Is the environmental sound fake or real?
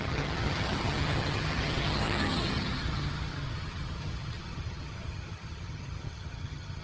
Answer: fake